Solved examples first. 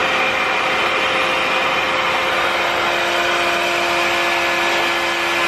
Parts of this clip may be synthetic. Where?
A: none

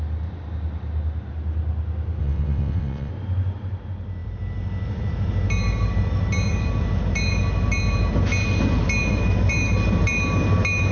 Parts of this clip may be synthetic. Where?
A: 2.2-3.1 (vocoder, WaveNeXt)

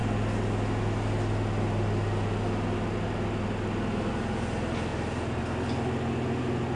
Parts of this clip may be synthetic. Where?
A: 4.9-5.4 (vocoder, BigVGAN v2)

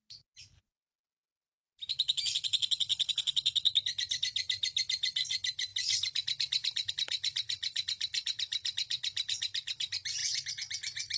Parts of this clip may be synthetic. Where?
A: none